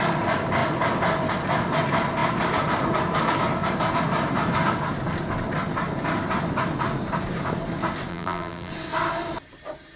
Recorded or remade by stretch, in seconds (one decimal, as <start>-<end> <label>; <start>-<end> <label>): 0.0-8.1 recorded; 8.1-8.7 remade; 8.7-10.0 recorded